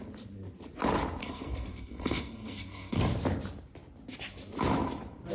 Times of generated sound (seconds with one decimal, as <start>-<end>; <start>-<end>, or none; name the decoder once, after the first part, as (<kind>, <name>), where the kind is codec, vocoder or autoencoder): 1.2-3.0 (codec, SNAC)